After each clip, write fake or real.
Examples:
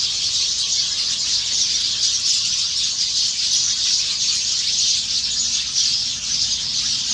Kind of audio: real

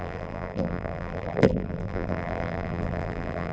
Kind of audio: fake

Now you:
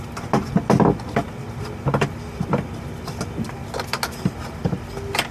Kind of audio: real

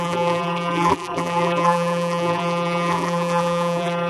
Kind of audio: fake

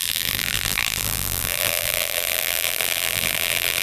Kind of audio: fake